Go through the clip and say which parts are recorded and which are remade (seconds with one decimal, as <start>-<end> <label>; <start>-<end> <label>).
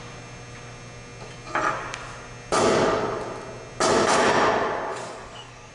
0.0-4.9 recorded; 4.9-5.7 remade